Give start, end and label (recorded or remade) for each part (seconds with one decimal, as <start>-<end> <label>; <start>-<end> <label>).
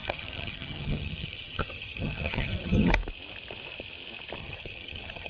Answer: 0.0-2.9 remade; 2.9-4.4 recorded; 4.4-5.3 remade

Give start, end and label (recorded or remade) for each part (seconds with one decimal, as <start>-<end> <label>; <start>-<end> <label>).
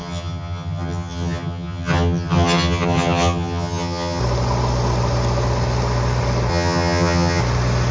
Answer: 0.0-4.2 remade; 4.2-6.5 recorded; 6.5-7.4 remade; 7.4-7.9 recorded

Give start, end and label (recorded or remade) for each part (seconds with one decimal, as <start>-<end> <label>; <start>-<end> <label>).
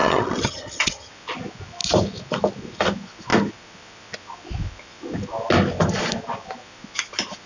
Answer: 0.0-1.1 remade; 1.1-7.5 recorded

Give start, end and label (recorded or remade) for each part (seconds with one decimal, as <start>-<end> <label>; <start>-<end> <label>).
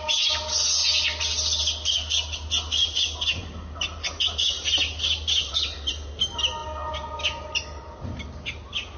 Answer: 0.0-9.0 recorded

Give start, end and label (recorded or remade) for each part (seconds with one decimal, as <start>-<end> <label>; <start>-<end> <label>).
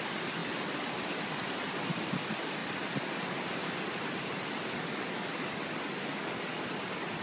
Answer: 0.0-7.2 recorded